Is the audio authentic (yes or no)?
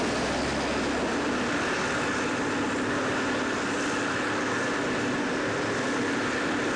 yes